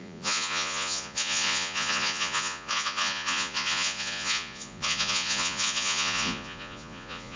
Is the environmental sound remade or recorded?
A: remade